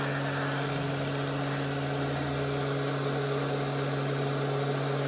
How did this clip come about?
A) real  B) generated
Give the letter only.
A